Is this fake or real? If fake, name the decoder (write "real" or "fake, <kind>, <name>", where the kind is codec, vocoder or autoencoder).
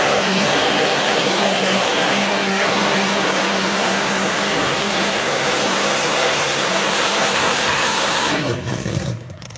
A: fake, codec, SNAC